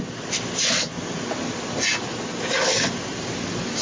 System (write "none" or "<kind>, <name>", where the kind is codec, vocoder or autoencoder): none